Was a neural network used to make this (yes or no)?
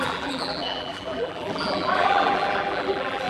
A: yes